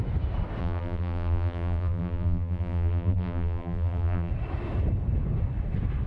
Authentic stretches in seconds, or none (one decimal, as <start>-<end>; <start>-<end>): 0.0-0.6; 4.3-6.1